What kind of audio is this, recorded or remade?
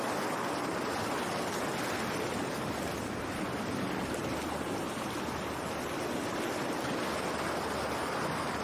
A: recorded